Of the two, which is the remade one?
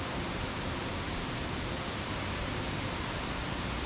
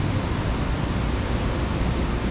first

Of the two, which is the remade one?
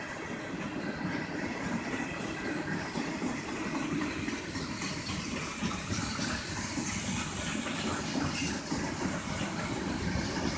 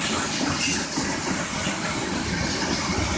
first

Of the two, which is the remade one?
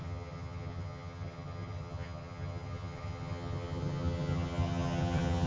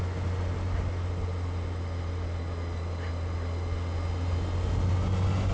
first